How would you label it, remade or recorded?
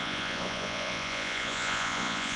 remade